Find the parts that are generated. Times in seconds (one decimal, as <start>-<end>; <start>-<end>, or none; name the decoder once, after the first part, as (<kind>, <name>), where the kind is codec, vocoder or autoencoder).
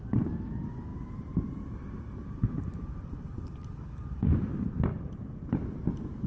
0.9-4.5 (vocoder, BigVGAN v2)